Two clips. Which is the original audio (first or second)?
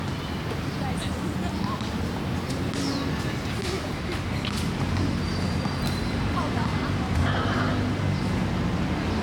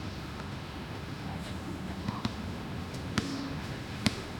first